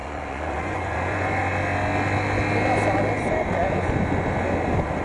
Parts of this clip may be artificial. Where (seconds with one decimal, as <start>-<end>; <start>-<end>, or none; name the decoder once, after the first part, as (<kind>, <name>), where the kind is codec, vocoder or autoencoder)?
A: 0.0-1.4 (vocoder, Vocos)